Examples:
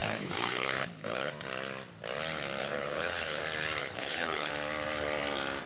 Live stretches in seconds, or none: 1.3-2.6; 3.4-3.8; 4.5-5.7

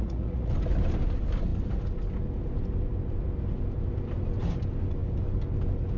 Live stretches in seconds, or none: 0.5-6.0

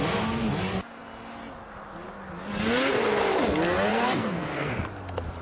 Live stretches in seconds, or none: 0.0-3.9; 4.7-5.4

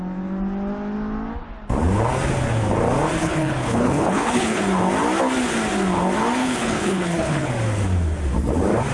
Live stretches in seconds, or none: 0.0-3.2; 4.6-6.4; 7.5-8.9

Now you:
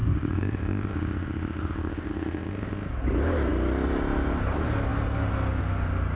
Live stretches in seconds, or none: 2.9-6.2